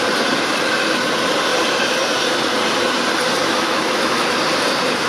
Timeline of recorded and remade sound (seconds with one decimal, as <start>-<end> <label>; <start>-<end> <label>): 0.0-3.4 recorded; 3.4-4.3 remade; 4.3-5.1 recorded